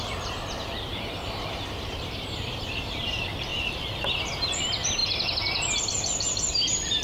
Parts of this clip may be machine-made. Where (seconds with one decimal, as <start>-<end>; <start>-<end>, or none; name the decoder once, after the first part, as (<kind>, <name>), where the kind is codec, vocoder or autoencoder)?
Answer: 0.0-3.5 (vocoder, BigVGAN v2); 4.2-5.0; 5.8-7.0